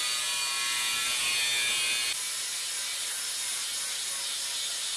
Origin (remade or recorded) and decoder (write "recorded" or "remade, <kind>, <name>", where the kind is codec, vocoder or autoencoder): recorded